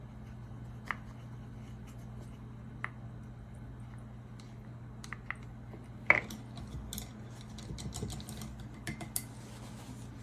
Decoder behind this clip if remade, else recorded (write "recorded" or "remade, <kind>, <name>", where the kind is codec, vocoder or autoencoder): recorded